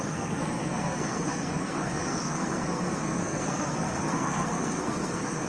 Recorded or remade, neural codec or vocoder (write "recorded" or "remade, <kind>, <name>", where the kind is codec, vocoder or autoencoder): remade, codec, SNAC